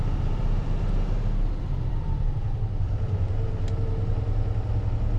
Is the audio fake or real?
real